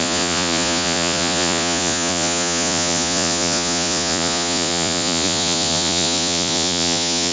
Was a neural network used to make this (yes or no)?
yes